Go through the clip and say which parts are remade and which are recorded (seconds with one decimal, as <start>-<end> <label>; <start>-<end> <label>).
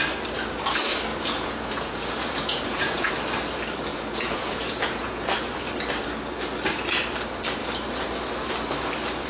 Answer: 0.0-1.1 recorded; 1.1-3.1 remade; 3.1-3.9 recorded; 3.9-5.2 remade; 5.2-9.3 recorded